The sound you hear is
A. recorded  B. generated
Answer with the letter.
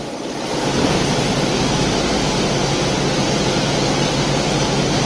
A